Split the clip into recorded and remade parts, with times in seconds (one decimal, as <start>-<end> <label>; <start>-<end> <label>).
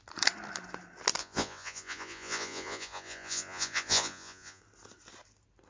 0.0-1.2 recorded; 1.2-4.6 remade; 4.6-5.7 recorded